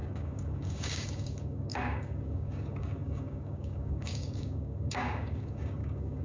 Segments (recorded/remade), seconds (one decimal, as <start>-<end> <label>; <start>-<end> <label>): 0.0-6.2 remade

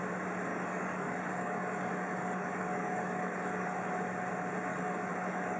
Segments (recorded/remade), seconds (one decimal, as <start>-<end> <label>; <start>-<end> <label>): 0.0-0.5 recorded; 0.5-3.9 remade; 3.9-4.7 recorded; 4.7-5.6 remade

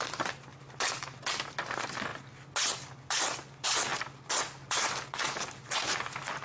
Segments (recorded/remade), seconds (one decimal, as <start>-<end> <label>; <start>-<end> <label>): 0.0-6.4 recorded

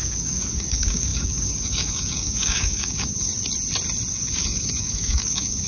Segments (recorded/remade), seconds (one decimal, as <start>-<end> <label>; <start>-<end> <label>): 0.0-3.3 remade; 3.3-4.1 recorded; 4.1-5.7 remade

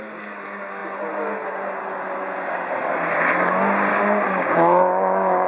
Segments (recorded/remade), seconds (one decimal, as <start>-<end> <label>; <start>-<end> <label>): 0.0-3.9 recorded; 3.9-5.5 remade

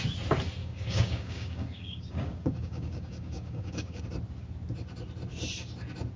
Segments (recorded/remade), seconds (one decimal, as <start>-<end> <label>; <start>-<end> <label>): 0.0-0.6 recorded; 0.6-4.0 remade; 4.0-6.2 recorded

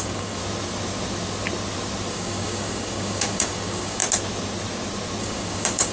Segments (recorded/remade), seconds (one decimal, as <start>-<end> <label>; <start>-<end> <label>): 0.0-0.4 remade; 0.4-2.1 recorded; 2.1-4.0 remade; 4.0-5.2 recorded; 5.2-5.9 remade

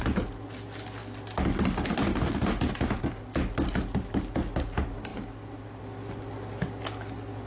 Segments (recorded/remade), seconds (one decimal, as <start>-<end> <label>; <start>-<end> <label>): 0.0-7.5 recorded